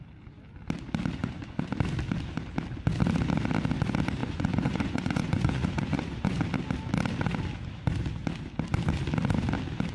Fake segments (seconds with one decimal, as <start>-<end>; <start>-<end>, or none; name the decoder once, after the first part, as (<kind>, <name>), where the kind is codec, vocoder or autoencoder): 1.2-1.7 (vocoder, Vocos); 4.2-6.4

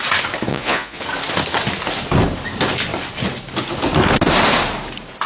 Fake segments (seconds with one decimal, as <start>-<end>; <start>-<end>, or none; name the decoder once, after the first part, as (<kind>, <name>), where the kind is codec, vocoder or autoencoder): 0.5-1.0 (vocoder, Vocos)